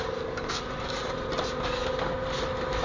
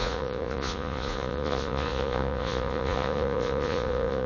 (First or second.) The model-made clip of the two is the second